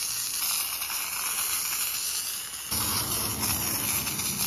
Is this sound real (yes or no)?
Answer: yes